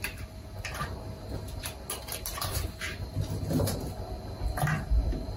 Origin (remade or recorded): recorded